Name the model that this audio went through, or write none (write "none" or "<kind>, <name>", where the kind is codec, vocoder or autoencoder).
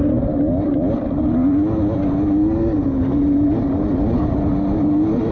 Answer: none